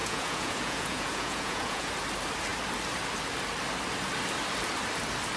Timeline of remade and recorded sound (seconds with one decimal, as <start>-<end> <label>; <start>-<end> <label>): 0.0-1.9 remade; 1.9-5.4 recorded